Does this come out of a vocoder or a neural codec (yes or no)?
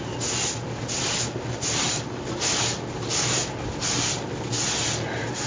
no